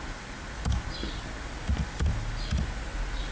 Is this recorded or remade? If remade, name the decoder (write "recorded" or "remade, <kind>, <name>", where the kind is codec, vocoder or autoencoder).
recorded